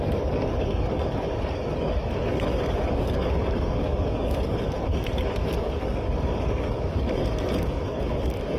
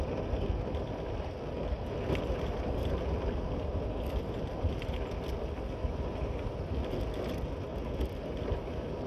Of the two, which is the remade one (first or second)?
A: first